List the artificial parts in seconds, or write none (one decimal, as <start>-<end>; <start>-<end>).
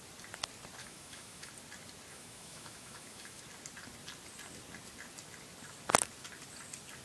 0.8-1.5; 2.1-3.4